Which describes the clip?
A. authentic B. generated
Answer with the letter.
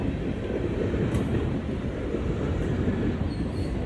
A